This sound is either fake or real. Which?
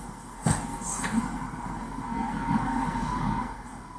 fake